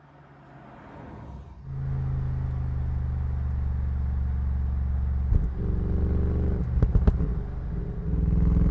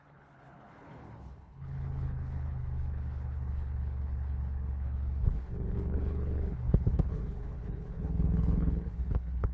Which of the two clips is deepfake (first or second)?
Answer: second